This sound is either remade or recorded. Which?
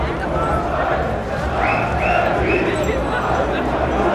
recorded